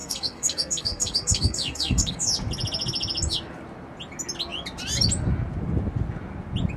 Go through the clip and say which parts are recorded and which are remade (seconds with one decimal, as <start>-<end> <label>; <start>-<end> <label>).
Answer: 0.0-2.3 remade; 2.3-6.8 recorded